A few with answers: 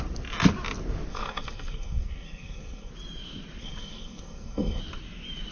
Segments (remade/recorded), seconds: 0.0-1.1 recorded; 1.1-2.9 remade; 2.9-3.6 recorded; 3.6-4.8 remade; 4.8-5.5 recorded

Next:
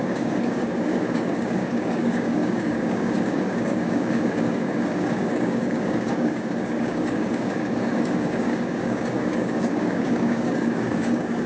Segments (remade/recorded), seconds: 0.0-11.5 remade

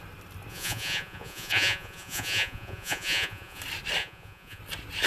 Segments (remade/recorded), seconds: 0.0-0.5 recorded; 0.5-3.6 remade; 3.6-4.0 recorded; 4.0-4.6 remade; 4.6-5.1 recorded

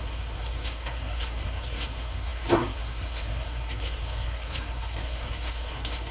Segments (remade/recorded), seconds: 0.0-6.1 remade